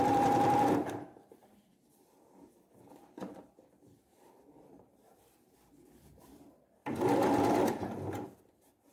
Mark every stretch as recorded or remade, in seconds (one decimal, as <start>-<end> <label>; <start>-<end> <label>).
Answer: 0.0-6.8 remade; 6.8-8.9 recorded